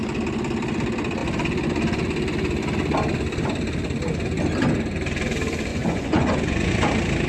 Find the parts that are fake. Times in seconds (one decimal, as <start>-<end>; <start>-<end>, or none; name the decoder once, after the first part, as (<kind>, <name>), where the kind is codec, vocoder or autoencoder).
5.7-6.8 (vocoder, Vocos)